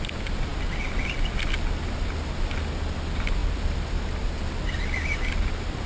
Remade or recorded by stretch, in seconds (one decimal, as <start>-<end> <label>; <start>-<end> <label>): 0.0-5.9 recorded